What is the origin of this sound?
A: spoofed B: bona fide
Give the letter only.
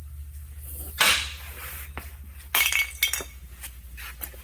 B